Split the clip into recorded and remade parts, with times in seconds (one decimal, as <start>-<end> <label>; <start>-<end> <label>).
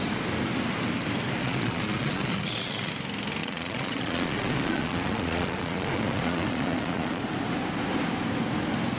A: 0.0-1.4 recorded; 1.4-2.9 remade; 2.9-3.4 recorded; 3.4-7.2 remade; 7.2-9.0 recorded